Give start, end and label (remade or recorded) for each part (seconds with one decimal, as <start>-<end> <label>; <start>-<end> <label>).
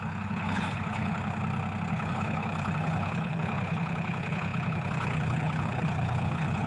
0.0-1.4 remade; 1.4-1.9 recorded; 1.9-6.7 remade